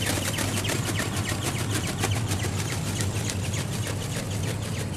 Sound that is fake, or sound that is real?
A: real